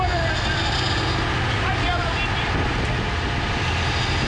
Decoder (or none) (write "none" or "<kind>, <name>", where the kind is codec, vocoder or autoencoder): none